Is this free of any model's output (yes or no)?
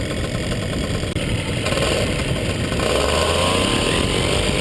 yes